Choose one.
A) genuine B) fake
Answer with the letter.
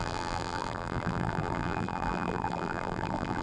B